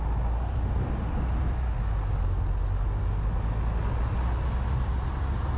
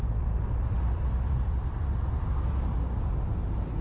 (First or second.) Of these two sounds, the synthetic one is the second